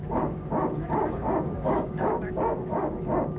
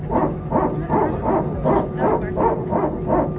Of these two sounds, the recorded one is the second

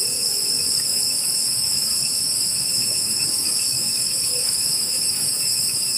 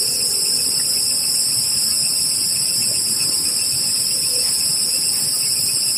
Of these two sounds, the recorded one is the second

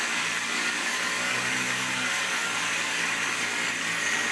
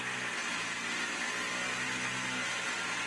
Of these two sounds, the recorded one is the second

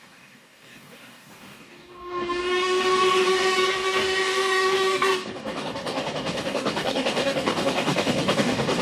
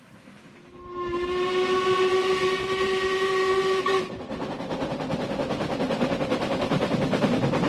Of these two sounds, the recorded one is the second